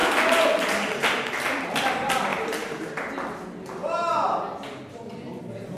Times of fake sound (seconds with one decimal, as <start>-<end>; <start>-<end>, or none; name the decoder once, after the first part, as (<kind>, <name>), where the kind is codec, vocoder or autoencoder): 2.3-3.1 (vocoder, BigVGAN v2); 3.8-4.4